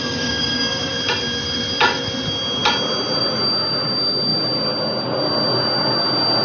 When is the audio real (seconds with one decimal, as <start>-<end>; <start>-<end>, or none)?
0.9-6.4